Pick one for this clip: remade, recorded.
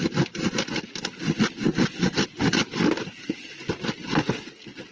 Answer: recorded